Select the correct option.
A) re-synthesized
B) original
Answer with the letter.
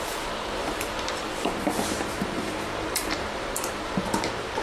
A